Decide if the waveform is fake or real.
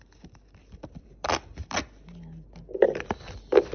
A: real